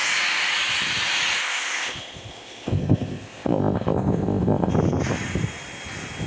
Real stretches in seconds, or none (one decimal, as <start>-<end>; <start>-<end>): 0.0-1.4; 4.7-6.3